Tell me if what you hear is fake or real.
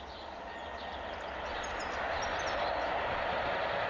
real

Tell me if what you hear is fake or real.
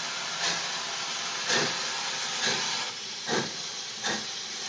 real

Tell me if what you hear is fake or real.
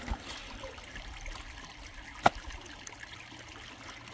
real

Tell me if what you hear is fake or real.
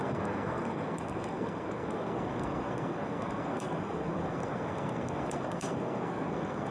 fake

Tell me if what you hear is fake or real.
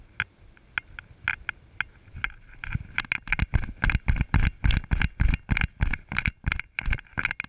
real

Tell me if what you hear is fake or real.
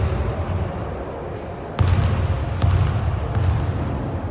real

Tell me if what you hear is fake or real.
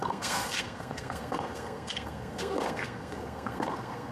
fake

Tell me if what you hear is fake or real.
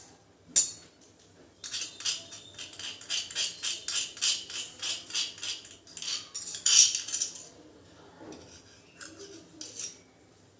real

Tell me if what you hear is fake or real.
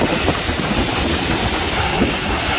real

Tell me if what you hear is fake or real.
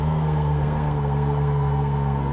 fake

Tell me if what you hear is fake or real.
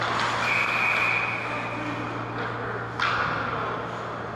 real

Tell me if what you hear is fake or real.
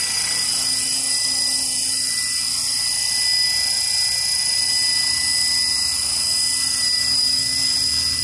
real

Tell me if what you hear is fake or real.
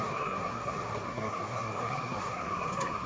fake